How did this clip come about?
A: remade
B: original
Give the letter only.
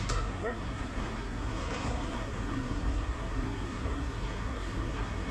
A